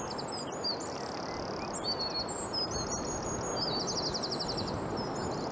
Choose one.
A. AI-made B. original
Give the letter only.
B